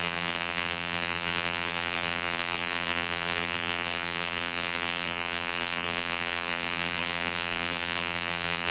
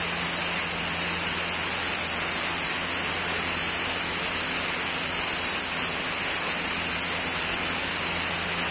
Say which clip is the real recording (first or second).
second